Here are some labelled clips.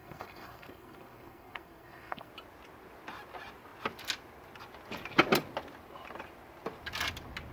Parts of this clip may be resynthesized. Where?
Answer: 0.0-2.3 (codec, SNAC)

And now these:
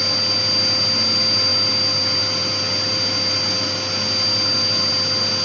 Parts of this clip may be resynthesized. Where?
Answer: none

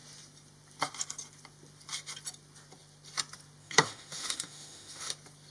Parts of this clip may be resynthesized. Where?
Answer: 3.6-5.1 (autoencoder, DAC-VAE)

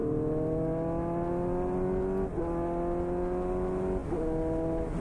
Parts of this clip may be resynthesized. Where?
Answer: none

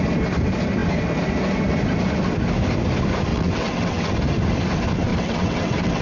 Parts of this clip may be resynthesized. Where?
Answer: 3.3-4.1 (vocoder, WaveNeXt); 5.1-6.0

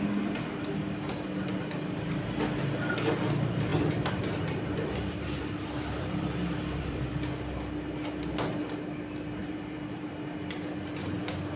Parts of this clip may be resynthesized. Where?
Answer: 3.7-7.3 (vocoder, BigVGAN v2); 9.4-10.1